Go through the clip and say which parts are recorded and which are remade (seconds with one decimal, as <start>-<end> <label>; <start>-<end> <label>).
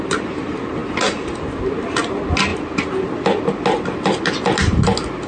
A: 0.0-5.3 recorded